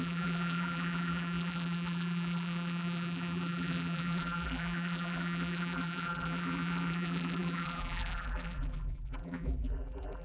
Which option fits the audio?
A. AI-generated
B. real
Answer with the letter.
A